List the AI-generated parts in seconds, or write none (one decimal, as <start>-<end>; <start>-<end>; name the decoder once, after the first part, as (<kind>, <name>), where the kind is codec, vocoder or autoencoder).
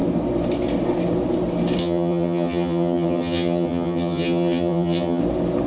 1.8-5.2 (vocoder, HiFi-GAN)